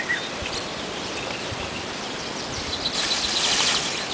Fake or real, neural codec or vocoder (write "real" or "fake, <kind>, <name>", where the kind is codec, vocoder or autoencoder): real